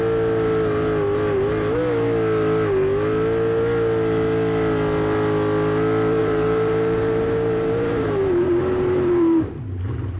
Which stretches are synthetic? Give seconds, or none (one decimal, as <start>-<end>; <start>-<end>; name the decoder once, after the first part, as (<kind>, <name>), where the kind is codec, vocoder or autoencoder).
6.2-9.6 (vocoder, BigVGAN v2)